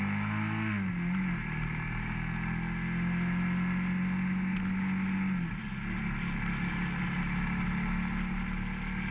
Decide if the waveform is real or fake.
real